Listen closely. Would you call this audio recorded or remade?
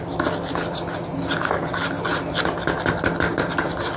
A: recorded